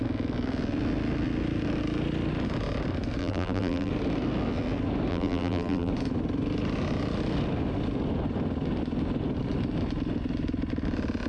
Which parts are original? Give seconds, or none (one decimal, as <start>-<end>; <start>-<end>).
0.0-3.2; 3.9-5.1; 5.9-11.3